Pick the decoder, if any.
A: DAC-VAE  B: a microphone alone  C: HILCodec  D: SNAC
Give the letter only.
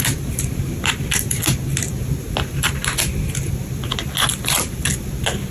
B